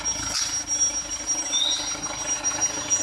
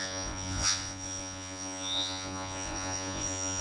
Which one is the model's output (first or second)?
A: second